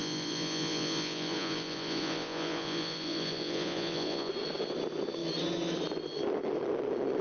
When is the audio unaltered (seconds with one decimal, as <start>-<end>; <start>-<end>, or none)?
4.3-7.2